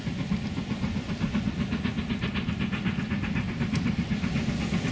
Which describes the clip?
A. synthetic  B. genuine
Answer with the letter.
B